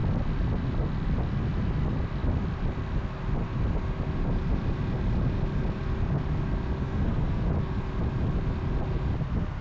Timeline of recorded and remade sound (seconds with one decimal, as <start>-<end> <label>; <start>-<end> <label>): 0.0-6.8 recorded; 6.8-7.5 remade; 7.5-9.6 recorded